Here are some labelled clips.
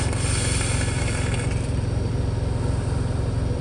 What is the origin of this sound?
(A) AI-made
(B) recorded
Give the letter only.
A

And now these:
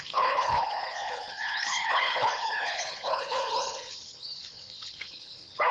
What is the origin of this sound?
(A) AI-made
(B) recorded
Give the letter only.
A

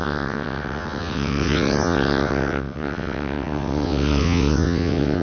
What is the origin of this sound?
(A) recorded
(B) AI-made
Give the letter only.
B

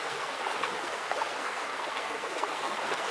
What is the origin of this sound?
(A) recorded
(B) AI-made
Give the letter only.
B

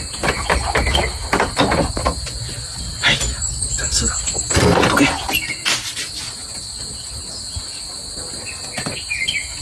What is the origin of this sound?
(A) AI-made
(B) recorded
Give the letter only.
B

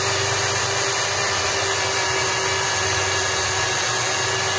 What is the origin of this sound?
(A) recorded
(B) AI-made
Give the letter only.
A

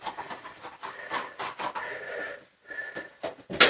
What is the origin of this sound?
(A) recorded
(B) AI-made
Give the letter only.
A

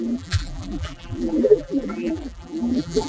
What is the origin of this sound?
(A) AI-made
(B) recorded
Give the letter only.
A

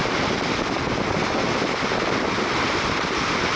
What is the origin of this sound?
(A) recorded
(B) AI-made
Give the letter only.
A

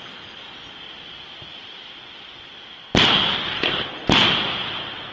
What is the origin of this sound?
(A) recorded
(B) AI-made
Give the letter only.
A